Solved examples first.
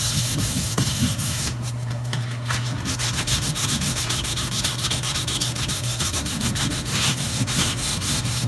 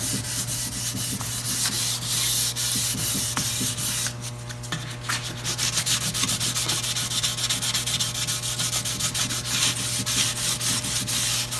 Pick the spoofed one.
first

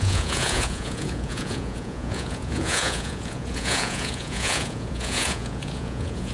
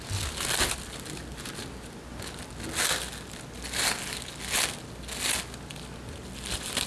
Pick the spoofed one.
first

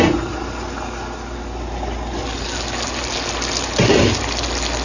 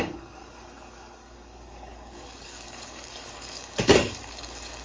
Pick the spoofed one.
second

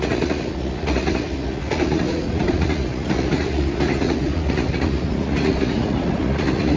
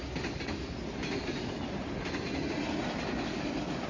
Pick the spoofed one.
first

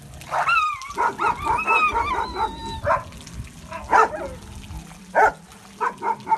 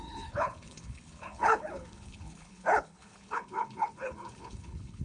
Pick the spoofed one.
second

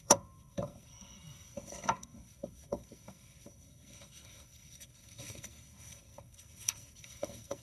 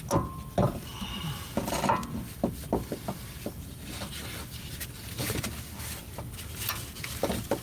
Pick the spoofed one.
first